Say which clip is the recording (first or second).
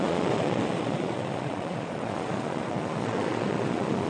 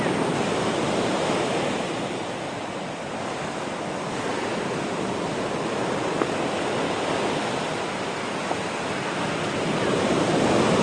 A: second